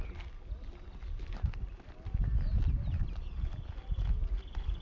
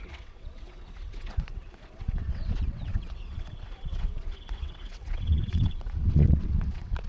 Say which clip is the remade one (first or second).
second